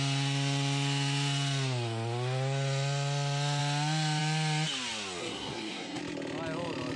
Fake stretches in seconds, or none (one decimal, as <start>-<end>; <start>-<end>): 5.2-6.0

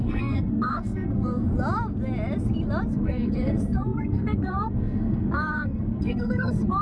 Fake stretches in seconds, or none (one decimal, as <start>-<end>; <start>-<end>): 0.0-1.5; 2.9-6.8

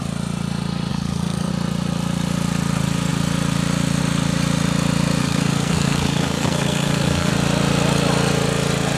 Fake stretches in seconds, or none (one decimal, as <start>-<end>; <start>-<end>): 0.9-1.5; 5.2-7.3

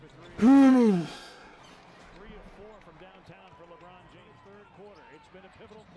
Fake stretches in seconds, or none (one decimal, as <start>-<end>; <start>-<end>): 0.7-1.6

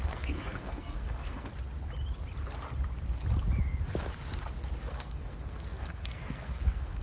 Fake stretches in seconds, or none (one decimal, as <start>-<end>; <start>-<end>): 0.0-1.5; 4.8-7.0

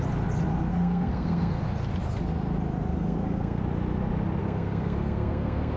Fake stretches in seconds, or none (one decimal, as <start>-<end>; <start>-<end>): 0.7-1.6; 2.9-3.6; 4.4-5.8

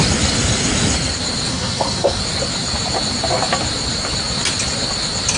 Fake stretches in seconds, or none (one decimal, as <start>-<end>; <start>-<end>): 1.5-2.2